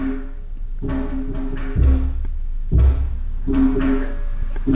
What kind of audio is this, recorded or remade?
recorded